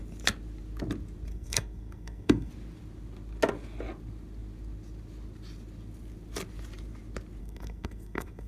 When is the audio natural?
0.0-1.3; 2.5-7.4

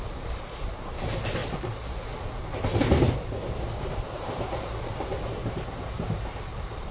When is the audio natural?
1.4-3.9

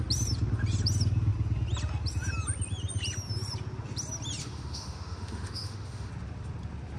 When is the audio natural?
0.0-4.4; 6.1-7.0

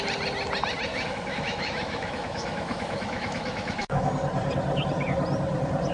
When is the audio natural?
0.0-0.9; 4.1-5.9

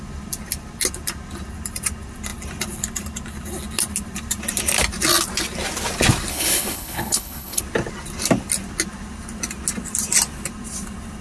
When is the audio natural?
0.0-6.3; 7.6-11.2